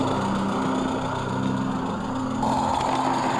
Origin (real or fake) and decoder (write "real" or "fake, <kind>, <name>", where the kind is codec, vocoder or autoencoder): real